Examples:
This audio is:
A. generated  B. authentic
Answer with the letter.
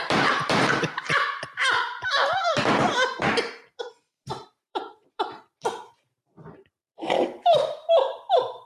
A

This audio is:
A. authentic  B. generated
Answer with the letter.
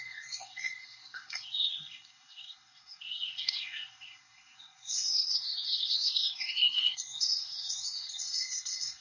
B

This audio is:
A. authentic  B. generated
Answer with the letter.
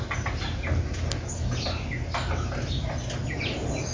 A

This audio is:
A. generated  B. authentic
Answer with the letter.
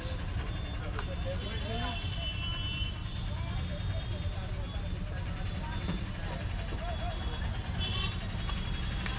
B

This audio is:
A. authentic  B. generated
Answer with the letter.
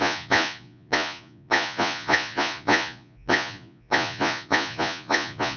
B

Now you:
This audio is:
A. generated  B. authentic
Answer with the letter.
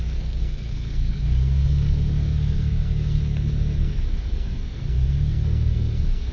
A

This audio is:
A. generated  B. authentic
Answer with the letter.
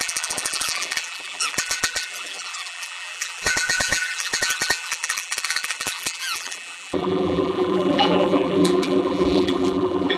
A